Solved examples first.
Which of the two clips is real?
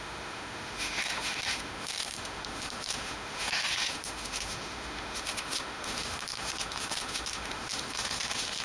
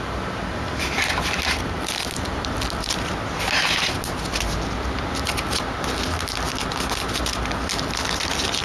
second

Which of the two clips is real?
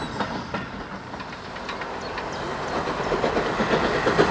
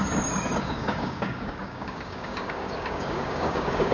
first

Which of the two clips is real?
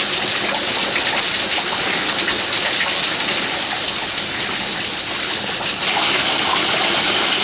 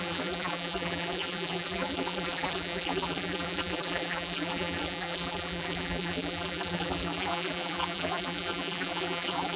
first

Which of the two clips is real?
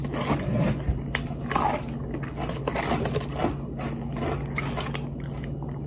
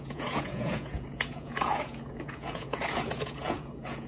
first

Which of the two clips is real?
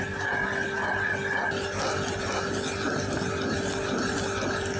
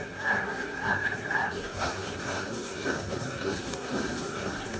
first